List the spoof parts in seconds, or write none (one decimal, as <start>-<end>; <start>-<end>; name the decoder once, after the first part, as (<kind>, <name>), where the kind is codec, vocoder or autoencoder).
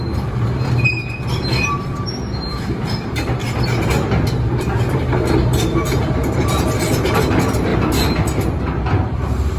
0.0-3.4 (vocoder, BigVGAN v2); 4.6-7.7; 8.4-9.6